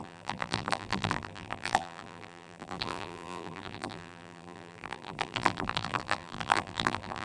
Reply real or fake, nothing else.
fake